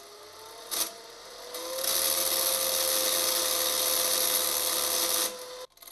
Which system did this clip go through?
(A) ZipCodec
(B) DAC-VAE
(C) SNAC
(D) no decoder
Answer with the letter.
D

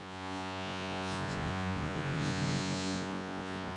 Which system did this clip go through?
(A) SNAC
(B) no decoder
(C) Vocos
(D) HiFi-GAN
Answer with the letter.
C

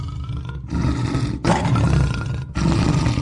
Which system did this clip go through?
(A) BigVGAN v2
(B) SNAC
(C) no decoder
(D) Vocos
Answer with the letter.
C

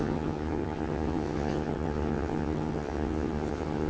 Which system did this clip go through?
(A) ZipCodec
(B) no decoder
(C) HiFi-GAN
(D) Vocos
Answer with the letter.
C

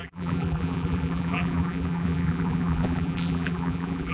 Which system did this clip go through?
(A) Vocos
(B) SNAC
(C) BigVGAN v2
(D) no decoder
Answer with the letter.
C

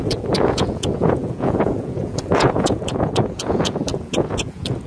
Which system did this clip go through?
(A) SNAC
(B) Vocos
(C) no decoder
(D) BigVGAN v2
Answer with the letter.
B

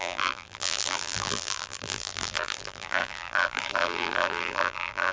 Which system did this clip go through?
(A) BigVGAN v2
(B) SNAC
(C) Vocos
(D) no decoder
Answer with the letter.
A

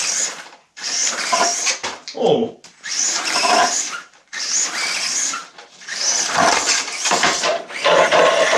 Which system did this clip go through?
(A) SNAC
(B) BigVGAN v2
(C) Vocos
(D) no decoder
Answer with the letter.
B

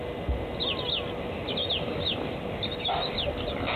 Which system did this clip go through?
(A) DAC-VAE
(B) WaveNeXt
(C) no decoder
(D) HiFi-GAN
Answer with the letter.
C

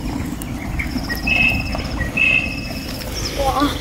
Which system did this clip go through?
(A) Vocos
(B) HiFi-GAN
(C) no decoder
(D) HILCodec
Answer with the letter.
C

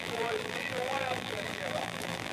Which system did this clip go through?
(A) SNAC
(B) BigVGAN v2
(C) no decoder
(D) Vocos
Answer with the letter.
B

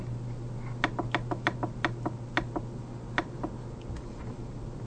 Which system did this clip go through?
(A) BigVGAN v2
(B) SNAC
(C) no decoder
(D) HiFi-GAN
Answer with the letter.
C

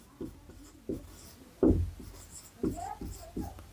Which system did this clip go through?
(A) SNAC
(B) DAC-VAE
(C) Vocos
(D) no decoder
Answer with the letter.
D